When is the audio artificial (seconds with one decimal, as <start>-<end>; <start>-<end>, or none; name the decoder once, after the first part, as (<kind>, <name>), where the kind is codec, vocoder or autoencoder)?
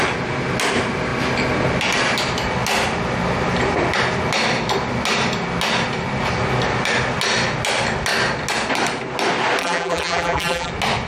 9.6-10.7 (vocoder, BigVGAN v2)